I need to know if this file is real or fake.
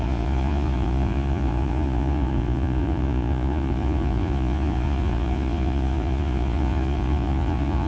fake